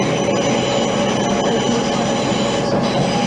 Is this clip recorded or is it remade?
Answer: recorded